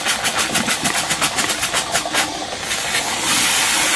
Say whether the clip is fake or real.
real